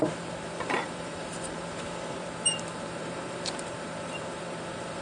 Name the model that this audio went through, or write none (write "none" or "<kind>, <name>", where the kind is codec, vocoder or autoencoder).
vocoder, BigVGAN v2